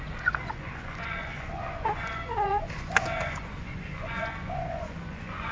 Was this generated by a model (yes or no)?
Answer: yes